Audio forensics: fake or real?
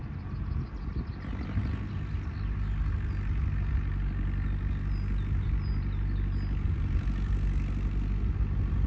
real